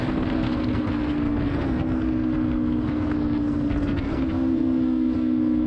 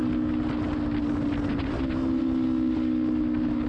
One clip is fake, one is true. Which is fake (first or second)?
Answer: first